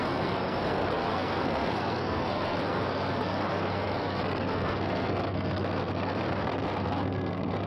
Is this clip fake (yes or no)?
yes